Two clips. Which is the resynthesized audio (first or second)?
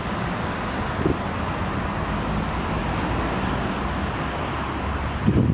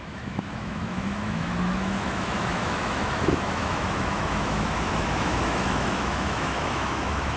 second